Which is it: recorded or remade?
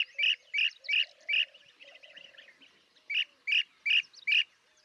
recorded